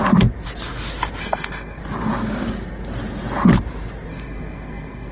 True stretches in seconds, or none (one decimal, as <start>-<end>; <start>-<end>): 0.0-1.2; 1.8-4.1

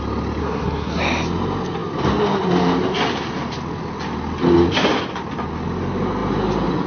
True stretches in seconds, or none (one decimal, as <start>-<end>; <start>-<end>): 0.0-0.4; 1.0-6.9

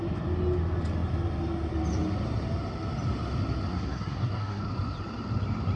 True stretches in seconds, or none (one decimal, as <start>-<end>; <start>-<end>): 0.0-3.7; 4.6-5.8

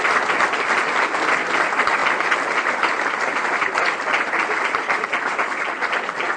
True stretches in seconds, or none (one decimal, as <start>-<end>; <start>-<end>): 0.0-6.4

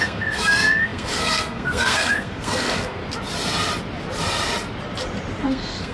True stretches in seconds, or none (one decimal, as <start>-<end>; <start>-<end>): 3.0-5.4